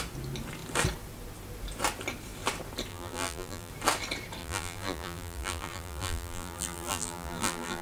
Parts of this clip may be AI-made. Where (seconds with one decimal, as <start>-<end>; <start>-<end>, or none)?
2.9-3.7; 4.4-7.8